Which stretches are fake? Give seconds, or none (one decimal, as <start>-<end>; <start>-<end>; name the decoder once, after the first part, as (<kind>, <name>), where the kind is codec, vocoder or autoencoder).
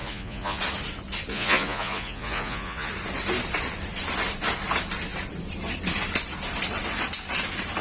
0.0-0.6 (vocoder, Vocos); 1.3-2.9